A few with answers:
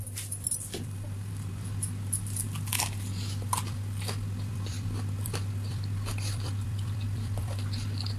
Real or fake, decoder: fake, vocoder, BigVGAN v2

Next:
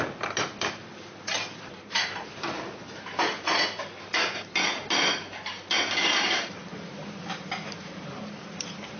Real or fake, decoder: fake, vocoder, BigVGAN v2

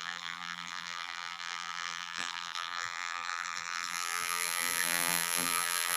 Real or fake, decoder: fake, vocoder, BigVGAN v2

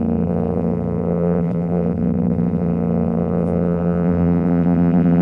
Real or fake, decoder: fake, vocoder, BigVGAN v2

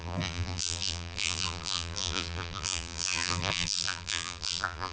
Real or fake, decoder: fake, vocoder, BigVGAN v2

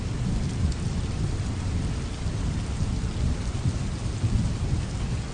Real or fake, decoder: real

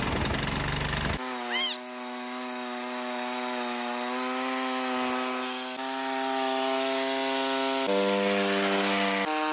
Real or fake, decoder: real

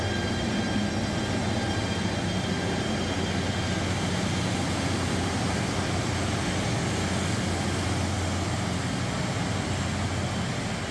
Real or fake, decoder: real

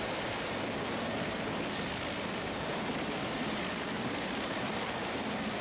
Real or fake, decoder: fake, vocoder, BigVGAN v2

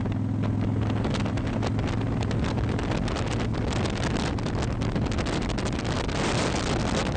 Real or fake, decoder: real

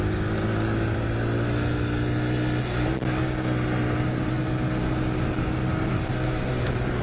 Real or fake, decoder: real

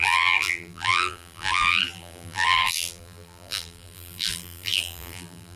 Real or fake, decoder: fake, vocoder, BigVGAN v2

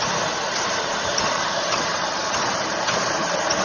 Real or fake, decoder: fake, vocoder, BigVGAN v2